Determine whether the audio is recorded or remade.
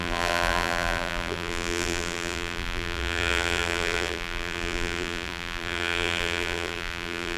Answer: remade